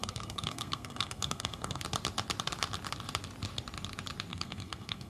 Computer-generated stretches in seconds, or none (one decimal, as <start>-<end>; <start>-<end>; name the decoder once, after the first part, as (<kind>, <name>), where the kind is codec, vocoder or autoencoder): 0.0-1.8 (codec, SNAC); 4.3-5.1